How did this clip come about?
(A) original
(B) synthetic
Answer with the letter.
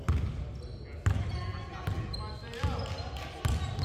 A